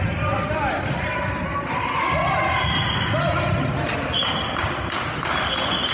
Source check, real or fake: real